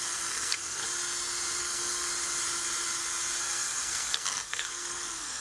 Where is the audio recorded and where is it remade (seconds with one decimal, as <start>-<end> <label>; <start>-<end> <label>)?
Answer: 0.0-0.8 remade; 0.8-1.6 recorded; 1.6-2.1 remade; 2.1-3.4 recorded; 3.4-5.4 remade